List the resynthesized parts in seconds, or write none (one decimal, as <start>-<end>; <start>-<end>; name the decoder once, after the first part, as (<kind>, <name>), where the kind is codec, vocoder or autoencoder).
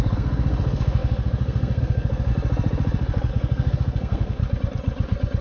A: 0.0-2.3 (codec, SNAC); 3.3-4.4